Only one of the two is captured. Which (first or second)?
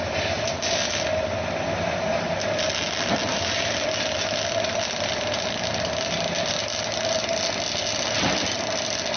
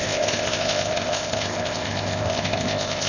first